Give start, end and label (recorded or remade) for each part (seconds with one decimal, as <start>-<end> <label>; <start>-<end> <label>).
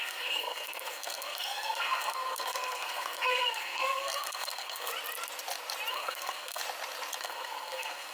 0.0-4.9 remade; 4.9-5.9 recorded; 5.9-6.6 remade; 6.6-7.2 recorded; 7.2-8.1 remade